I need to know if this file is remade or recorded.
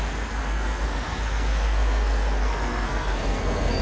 remade